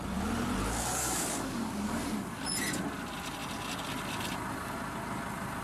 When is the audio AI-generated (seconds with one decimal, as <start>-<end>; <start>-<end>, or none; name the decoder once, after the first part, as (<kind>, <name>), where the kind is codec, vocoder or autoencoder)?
0.6-2.4 (codec, DAC)